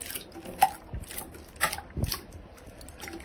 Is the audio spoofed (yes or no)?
no